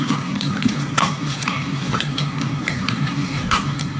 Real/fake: fake